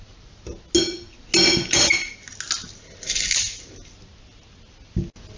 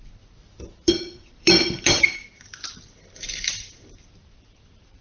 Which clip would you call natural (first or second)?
first